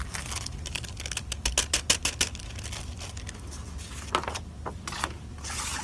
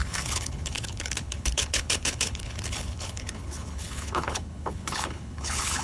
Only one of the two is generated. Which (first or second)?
second